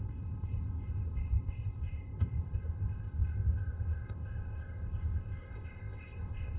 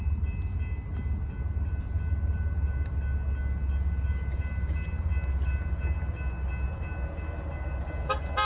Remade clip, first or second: first